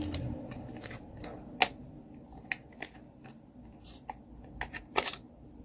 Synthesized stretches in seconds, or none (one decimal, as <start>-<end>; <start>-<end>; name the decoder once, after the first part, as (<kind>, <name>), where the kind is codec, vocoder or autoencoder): 0.0-1.3 (vocoder, BigVGAN v2); 4.7-5.6